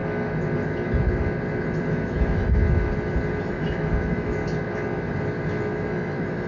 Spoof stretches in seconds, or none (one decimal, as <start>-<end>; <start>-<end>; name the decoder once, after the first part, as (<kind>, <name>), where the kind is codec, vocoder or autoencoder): 1.9-2.6 (autoencoder, DAC-VAE); 3.4-4.4; 5.7-6.5